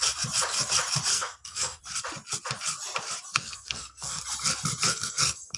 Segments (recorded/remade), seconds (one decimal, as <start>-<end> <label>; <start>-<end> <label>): 0.0-1.1 recorded; 1.1-1.8 remade; 1.8-3.3 recorded; 3.3-4.2 remade; 4.2-4.9 recorded; 4.9-5.6 remade